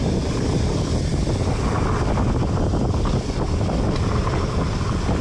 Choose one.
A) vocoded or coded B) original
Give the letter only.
B